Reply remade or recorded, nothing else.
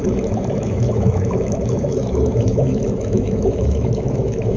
remade